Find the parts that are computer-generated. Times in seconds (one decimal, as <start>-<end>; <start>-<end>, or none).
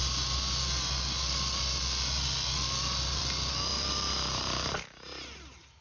3.7-4.7